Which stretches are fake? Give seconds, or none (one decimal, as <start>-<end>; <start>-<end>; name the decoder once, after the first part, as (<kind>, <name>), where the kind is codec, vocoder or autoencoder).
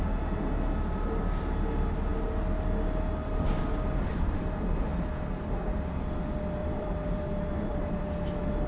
6.6-8.0 (vocoder, BigVGAN v2)